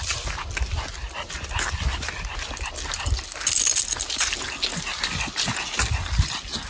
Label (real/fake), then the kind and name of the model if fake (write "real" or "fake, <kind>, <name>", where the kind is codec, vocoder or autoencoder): real